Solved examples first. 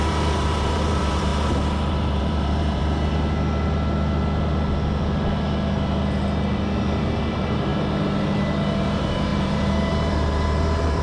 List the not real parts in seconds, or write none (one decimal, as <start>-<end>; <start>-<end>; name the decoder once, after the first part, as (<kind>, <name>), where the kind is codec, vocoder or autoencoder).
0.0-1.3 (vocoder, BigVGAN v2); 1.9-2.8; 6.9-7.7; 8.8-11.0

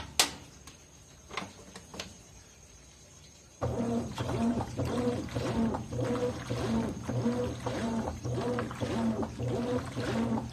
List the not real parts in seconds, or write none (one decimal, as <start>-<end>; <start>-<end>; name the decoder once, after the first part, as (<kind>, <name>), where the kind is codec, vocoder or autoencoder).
1.9-5.5 (vocoder, BigVGAN v2); 7.8-8.5

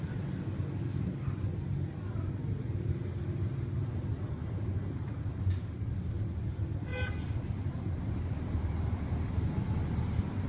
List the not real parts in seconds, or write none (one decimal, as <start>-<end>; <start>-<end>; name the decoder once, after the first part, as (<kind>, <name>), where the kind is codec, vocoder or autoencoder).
6.9-9.3 (vocoder, BigVGAN v2)